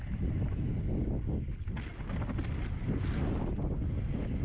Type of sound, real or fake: real